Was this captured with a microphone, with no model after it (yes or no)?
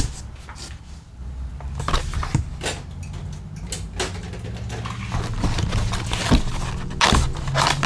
yes